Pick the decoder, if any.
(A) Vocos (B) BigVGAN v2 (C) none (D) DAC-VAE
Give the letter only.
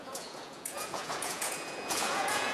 A